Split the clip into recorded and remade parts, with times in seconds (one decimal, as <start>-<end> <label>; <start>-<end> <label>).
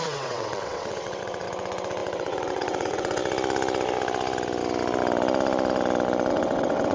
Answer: 0.0-3.2 remade; 3.2-6.3 recorded; 6.3-6.9 remade